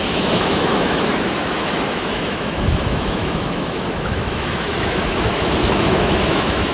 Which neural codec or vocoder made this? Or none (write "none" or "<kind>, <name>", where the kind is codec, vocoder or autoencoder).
autoencoder, DAC-VAE